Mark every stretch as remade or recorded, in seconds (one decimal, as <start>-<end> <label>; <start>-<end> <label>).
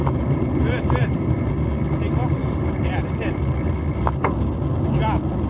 0.0-1.5 remade; 1.5-2.4 recorded; 2.4-3.4 remade; 3.4-5.5 recorded